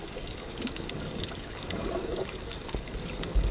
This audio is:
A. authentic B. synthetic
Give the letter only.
B